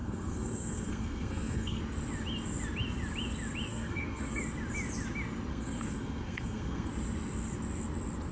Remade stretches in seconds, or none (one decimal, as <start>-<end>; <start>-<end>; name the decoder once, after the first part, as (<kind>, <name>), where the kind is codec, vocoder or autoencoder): 0.0-1.8 (codec, SNAC); 3.7-4.4; 5.5-6.9